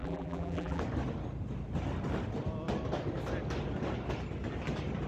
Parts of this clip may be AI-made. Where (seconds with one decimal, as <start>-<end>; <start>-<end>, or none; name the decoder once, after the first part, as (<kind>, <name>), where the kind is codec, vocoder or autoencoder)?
0.0-0.8 (vocoder, BigVGAN v2)